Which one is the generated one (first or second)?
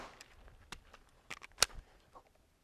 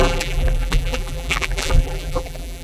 second